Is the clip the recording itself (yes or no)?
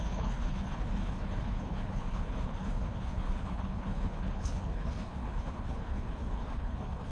no